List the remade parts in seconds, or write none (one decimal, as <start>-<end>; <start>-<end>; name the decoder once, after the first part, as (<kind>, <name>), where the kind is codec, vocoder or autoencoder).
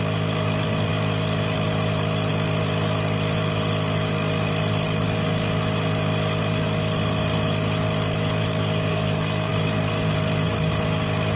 8.9-9.5 (codec, SNAC)